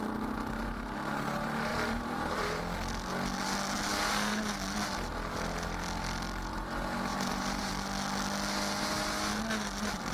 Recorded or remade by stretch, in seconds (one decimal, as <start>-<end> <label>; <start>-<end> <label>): 0.0-1.7 recorded; 1.7-2.6 remade; 2.6-7.1 recorded; 7.1-7.7 remade; 7.7-10.1 recorded